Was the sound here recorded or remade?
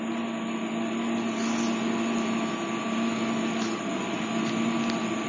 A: recorded